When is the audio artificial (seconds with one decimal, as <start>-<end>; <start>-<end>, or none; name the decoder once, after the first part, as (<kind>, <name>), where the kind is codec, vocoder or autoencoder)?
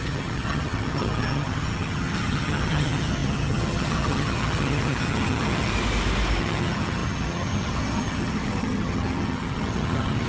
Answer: 0.0-5.7 (vocoder, HiFi-GAN); 6.4-10.3